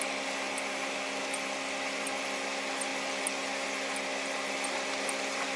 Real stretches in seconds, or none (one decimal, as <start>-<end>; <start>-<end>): 0.0-5.6

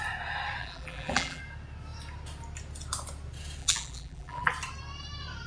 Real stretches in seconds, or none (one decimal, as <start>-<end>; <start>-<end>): 0.0-0.6; 1.4-3.6; 4.5-5.5